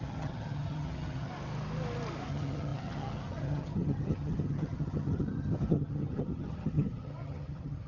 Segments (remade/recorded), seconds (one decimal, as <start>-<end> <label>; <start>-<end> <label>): 0.0-1.3 remade; 1.3-2.3 recorded; 2.3-7.9 remade